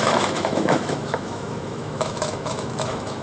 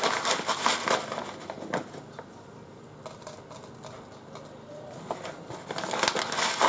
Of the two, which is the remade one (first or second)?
first